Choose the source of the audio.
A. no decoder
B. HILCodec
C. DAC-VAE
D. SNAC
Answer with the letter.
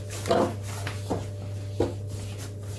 A